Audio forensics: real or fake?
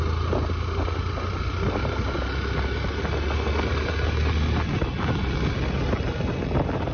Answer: real